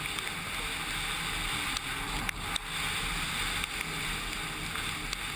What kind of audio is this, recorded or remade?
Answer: recorded